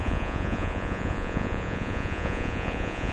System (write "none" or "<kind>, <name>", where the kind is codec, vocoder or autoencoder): vocoder, Vocos